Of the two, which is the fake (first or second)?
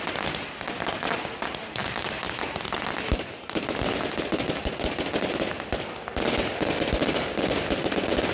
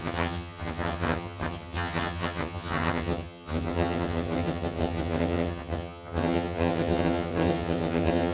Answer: second